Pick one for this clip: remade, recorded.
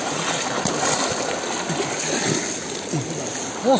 recorded